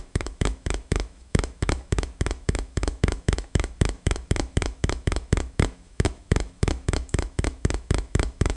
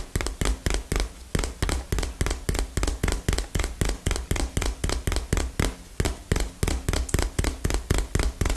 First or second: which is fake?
first